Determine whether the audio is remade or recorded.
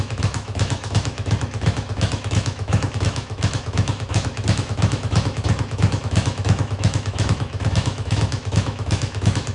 remade